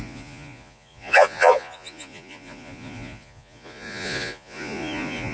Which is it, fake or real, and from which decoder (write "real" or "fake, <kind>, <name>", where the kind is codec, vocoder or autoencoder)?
fake, vocoder, Vocos